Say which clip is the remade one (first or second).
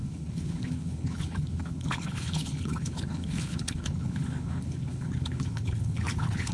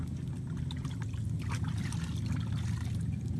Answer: first